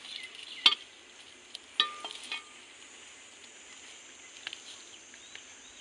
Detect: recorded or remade recorded